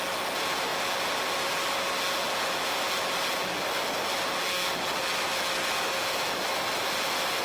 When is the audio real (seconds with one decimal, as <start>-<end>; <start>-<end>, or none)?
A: 0.0-7.4